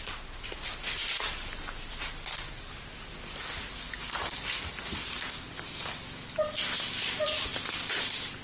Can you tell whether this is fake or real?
real